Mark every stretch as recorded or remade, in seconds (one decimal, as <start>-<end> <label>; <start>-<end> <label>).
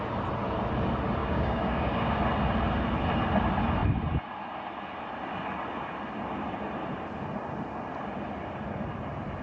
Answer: 0.0-1.2 recorded; 1.2-2.2 remade; 2.2-9.4 recorded